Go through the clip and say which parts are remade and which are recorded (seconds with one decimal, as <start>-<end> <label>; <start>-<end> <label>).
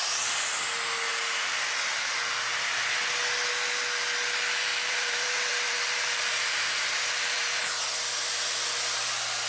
0.0-4.7 recorded; 4.7-7.8 remade; 7.8-9.5 recorded